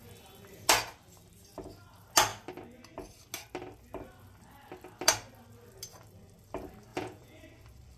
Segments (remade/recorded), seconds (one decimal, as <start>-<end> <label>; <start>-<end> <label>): 0.0-6.9 recorded; 6.9-7.4 remade; 7.4-8.0 recorded